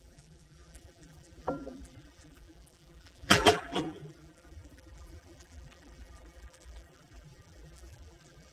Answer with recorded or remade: remade